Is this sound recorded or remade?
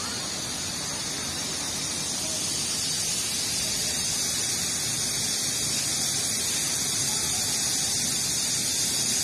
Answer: recorded